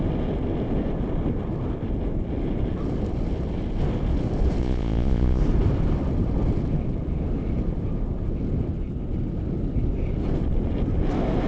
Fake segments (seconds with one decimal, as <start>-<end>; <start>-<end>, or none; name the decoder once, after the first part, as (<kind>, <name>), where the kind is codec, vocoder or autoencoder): 4.6-5.4 (vocoder, Vocos)